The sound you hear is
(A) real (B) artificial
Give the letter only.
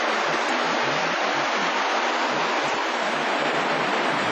A